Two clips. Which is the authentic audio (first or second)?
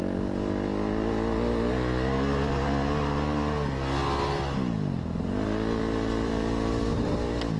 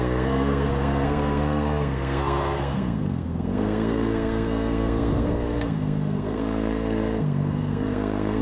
first